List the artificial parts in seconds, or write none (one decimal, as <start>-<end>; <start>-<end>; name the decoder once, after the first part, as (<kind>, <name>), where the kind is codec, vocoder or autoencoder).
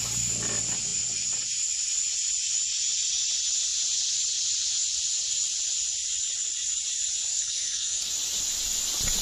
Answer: 7.3-8.1 (codec, SNAC)